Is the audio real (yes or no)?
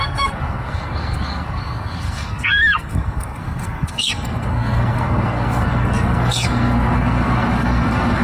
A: no